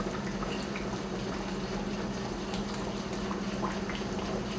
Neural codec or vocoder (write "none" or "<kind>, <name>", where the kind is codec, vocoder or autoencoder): none